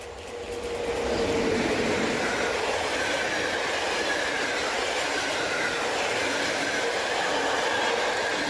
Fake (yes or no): no